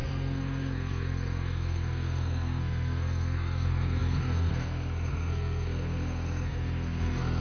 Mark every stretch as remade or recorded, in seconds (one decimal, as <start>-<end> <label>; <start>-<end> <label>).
0.0-7.4 remade